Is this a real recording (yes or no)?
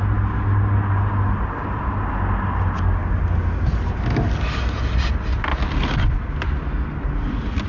yes